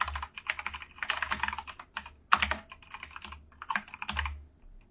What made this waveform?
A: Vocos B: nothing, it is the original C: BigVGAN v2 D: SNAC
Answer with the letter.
B